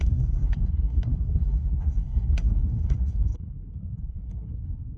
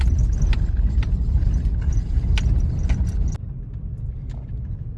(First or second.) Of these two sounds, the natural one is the second